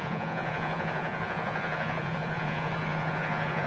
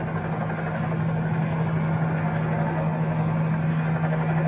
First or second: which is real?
second